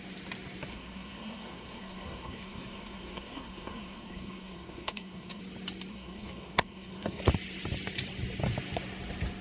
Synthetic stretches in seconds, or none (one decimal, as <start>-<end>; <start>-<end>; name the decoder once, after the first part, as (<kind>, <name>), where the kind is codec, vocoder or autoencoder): 0.7-5.4 (codec, SNAC); 5.9-7.2